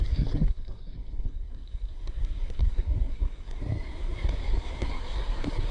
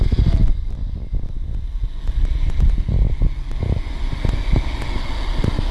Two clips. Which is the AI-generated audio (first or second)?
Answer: first